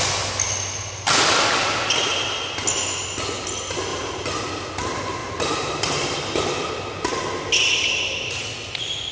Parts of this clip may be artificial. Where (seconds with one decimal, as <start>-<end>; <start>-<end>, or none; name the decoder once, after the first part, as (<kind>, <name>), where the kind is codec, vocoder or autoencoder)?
3.9-4.4 (vocoder, BigVGAN v2); 5.2-6.7